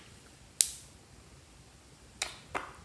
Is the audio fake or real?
real